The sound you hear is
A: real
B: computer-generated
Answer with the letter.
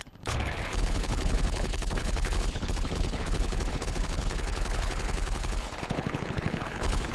B